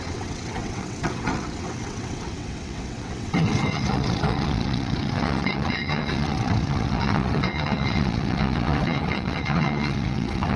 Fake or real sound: fake